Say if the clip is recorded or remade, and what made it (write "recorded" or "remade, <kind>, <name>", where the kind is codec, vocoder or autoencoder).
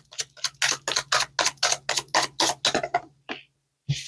recorded